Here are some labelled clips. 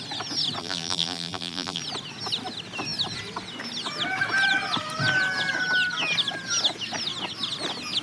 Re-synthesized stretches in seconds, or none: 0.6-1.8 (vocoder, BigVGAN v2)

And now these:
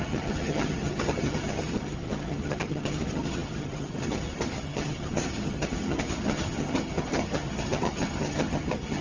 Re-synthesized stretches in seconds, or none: 0.0-9.0 (vocoder, HiFi-GAN)

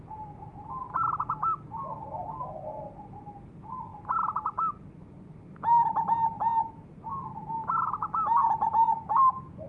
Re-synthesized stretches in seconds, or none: none

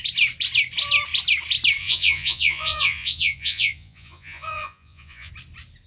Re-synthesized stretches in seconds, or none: 1.8-5.3 (vocoder, Vocos)

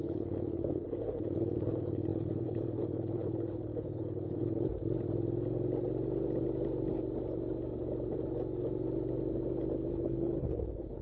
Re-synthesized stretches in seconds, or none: 0.0-4.7 (codec, HILCodec); 9.9-11.0

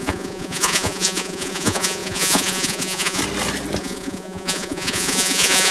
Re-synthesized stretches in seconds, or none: 0.0-3.2 (vocoder, Vocos); 3.8-5.7

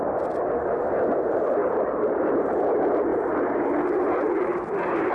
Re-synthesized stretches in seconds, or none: 1.6-2.2 (vocoder, BigVGAN v2); 4.2-5.1